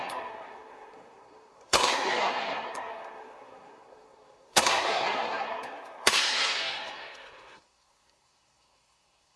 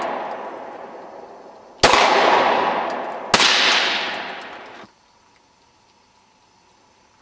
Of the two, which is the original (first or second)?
second